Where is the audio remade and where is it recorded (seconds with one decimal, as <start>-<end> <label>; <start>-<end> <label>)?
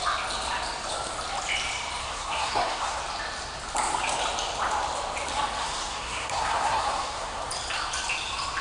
0.0-2.0 recorded; 2.0-3.0 remade; 3.0-5.6 recorded; 5.6-7.4 remade; 7.4-8.6 recorded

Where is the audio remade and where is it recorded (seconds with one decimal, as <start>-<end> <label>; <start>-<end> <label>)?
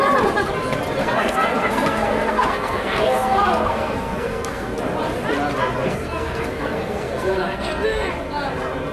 0.0-1.0 recorded; 1.0-4.8 remade; 4.8-5.8 recorded; 5.8-8.1 remade; 8.1-8.9 recorded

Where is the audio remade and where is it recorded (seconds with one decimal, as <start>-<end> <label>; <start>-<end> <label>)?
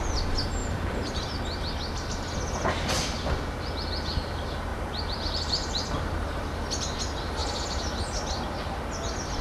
0.0-0.6 recorded; 0.6-1.2 remade; 1.2-4.7 recorded; 4.7-6.4 remade; 6.4-9.4 recorded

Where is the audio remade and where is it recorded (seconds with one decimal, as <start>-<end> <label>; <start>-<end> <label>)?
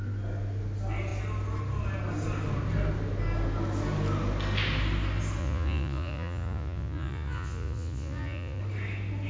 0.0-5.4 recorded; 5.4-8.6 remade; 8.6-9.3 recorded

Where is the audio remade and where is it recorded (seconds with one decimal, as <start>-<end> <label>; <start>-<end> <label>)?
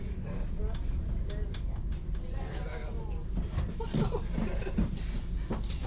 0.0-5.9 recorded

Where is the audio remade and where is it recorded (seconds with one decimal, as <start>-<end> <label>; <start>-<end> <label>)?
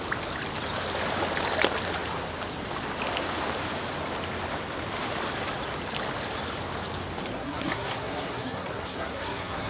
0.0-7.3 recorded; 7.3-9.7 remade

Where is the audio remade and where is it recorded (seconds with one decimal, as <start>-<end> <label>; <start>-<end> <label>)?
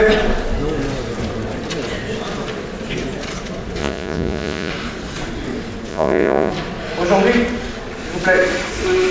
0.0-3.8 recorded; 3.8-4.7 remade; 4.7-5.9 recorded; 5.9-6.5 remade; 6.5-9.1 recorded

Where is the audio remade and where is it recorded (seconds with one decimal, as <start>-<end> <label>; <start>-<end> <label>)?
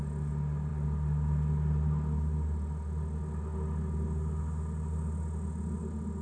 0.0-6.2 recorded